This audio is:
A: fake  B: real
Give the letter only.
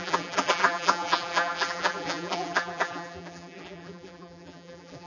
A